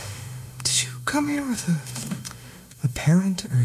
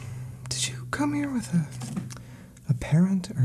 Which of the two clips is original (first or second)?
second